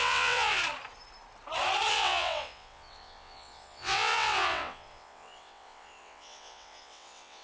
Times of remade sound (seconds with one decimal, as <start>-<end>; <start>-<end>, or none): 0.0-0.6; 1.9-7.4